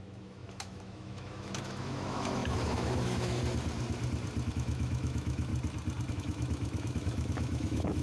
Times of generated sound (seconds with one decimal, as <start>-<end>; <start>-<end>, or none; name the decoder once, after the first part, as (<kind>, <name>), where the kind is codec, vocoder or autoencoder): 0.0-3.4 (autoencoder, DAC-VAE); 4.5-5.5; 6.1-8.0